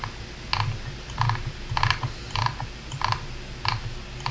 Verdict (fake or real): real